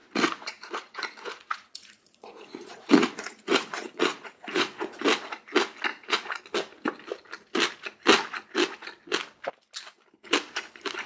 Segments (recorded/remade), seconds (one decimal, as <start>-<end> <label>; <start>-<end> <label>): 0.0-5.0 remade; 5.0-5.9 recorded; 5.9-6.4 remade; 6.4-11.1 recorded